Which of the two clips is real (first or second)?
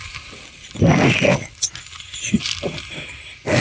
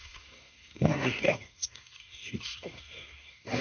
first